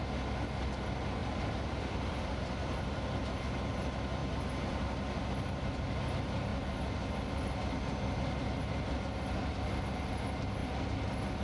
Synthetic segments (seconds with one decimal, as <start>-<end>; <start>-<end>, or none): 1.2-3.7; 4.2-5.3

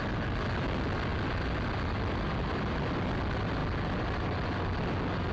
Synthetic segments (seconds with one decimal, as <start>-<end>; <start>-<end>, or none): none

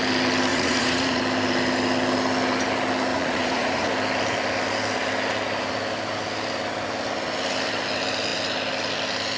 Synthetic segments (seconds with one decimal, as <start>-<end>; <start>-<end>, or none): 0.5-1.2; 3.1-3.9

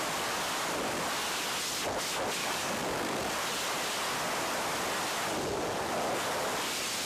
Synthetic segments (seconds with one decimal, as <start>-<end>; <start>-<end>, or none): 2.4-3.2

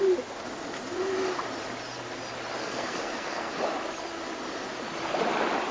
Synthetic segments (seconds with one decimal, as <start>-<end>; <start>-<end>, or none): 2.6-3.5

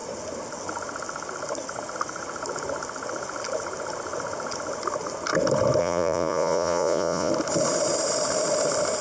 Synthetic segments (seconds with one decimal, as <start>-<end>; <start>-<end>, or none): 5.8-7.3